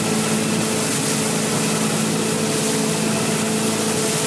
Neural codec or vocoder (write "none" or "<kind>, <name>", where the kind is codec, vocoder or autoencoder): none